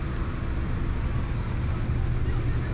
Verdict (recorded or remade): recorded